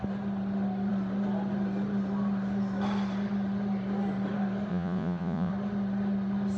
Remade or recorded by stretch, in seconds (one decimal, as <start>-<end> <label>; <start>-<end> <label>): 0.0-4.7 recorded; 4.7-5.5 remade; 5.5-6.6 recorded